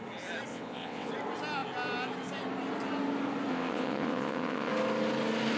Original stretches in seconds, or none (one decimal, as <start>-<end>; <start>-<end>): 0.0-0.5; 1.1-3.5; 4.7-5.6